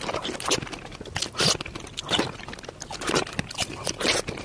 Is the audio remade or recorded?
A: recorded